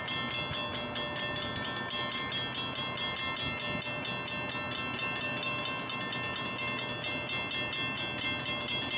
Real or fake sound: real